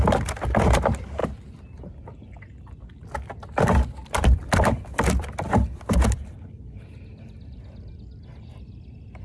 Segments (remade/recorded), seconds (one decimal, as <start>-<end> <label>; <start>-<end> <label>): 0.0-1.2 recorded; 1.2-1.8 remade; 1.8-4.0 recorded; 4.0-7.9 remade; 7.9-9.2 recorded